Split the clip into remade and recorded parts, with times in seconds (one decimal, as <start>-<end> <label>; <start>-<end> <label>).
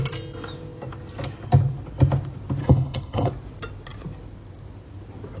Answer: 0.0-2.6 recorded; 2.6-3.3 remade; 3.3-5.4 recorded